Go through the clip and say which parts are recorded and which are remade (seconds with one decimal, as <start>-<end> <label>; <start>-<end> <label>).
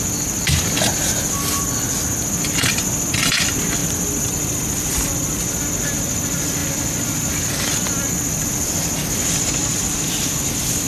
0.0-3.8 recorded; 3.8-5.6 remade; 5.6-9.6 recorded; 9.6-10.9 remade